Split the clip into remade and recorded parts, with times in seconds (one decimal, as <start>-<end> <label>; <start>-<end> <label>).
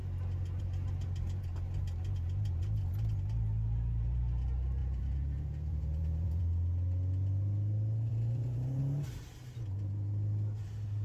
0.0-4.8 recorded; 4.8-6.4 remade; 6.4-8.1 recorded; 8.1-8.8 remade; 8.8-11.0 recorded